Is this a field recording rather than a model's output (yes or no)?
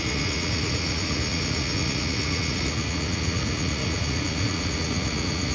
no